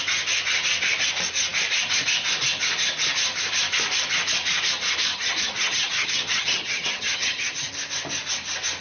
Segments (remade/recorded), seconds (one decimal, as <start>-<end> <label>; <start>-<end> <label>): 0.0-5.1 recorded; 5.1-7.7 remade; 7.7-8.8 recorded